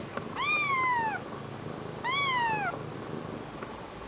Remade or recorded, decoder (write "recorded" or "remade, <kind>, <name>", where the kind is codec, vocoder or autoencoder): recorded